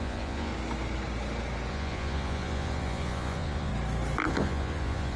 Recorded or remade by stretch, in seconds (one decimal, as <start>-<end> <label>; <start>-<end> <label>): 0.0-0.5 remade; 0.5-1.7 recorded; 1.7-3.7 remade; 3.7-4.3 recorded; 4.3-5.2 remade